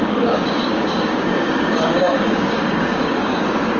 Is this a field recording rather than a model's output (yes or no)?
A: no